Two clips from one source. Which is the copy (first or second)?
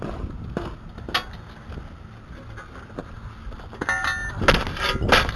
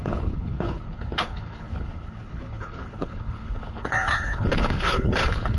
second